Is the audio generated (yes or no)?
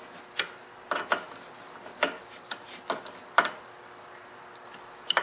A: no